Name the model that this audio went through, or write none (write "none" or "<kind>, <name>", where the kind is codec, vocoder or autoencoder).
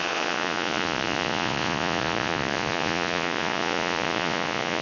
vocoder, Vocos